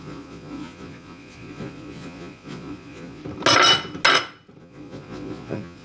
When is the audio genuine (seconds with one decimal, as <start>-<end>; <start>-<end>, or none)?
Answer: 3.2-4.6